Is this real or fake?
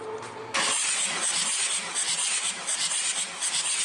real